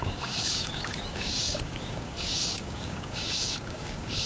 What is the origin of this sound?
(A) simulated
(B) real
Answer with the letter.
A